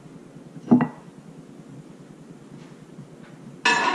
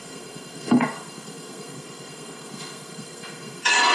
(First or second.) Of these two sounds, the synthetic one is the second